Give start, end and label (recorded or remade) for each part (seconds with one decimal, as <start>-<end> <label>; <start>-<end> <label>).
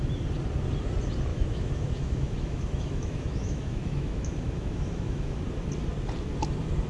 0.0-1.3 recorded; 1.3-5.4 remade; 5.4-6.9 recorded